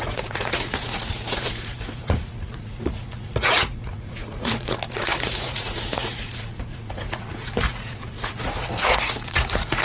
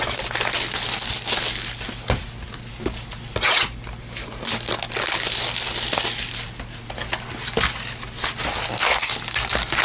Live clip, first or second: second